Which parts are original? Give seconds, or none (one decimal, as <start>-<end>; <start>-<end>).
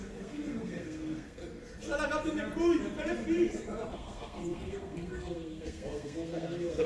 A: 1.4-3.9